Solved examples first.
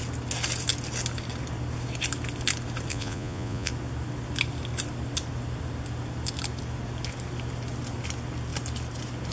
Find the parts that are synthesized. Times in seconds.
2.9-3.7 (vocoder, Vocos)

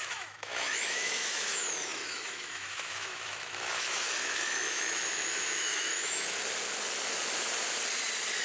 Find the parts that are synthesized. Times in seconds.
0.0-6.4 (autoencoder, DAC-VAE)

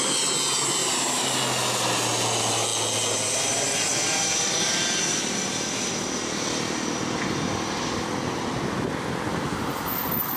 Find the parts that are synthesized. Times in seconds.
0.8-1.4 (vocoder, BigVGAN v2); 9.3-10.0

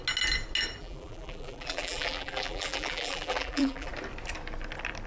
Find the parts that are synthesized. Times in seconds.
0.8-3.9 (vocoder, BigVGAN v2)

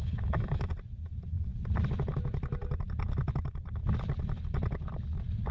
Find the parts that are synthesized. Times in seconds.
0.0-0.7 (autoencoder, DAC-VAE)